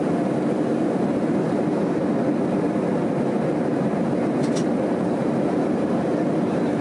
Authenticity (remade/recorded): recorded